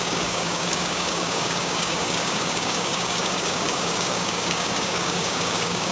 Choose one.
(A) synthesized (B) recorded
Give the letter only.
A